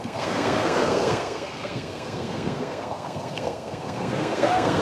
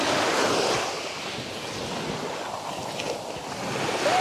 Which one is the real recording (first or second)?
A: second